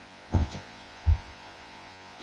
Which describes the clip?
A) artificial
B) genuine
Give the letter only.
A